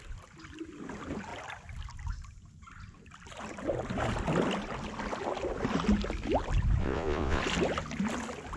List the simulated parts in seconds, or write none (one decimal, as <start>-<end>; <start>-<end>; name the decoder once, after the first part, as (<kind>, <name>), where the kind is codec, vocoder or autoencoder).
6.8-7.4 (vocoder, Vocos)